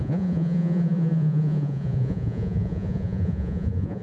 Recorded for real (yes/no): no